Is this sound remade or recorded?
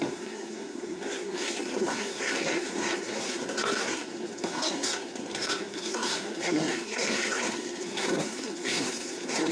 remade